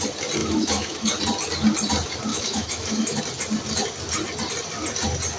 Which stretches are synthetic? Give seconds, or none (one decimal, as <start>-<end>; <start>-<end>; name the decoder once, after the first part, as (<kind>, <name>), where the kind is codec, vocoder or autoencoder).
0.4-1.1 (autoencoder, DAC-VAE); 2.3-3.2